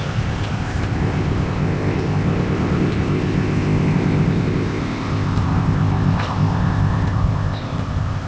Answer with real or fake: fake